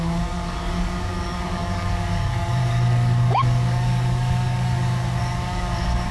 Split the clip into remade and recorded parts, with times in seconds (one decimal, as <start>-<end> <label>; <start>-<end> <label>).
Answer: 0.0-6.1 remade